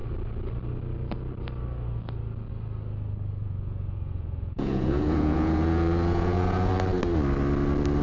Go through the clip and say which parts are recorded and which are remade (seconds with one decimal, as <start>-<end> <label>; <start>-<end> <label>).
0.0-3.4 recorded; 3.4-6.7 remade; 6.7-8.0 recorded